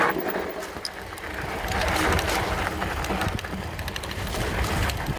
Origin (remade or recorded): recorded